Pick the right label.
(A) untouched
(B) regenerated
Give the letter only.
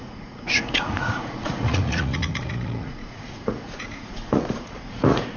B